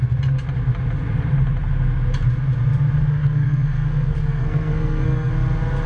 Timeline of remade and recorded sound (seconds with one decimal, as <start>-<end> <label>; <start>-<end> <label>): 0.0-3.0 recorded; 3.0-5.3 remade; 5.3-5.9 recorded